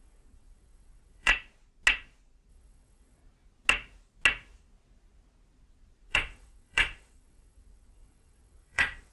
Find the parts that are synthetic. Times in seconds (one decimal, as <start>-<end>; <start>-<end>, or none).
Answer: 0.0-1.3; 2.5-3.2; 6.1-9.1